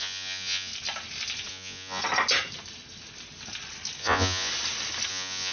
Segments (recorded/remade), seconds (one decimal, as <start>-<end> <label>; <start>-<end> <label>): 0.0-0.7 remade; 0.7-1.5 recorded; 1.5-2.0 remade; 2.0-4.0 recorded; 4.0-4.5 remade; 4.5-5.1 recorded; 5.1-5.5 remade